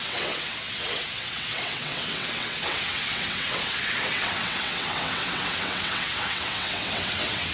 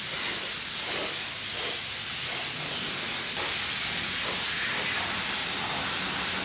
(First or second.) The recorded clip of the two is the second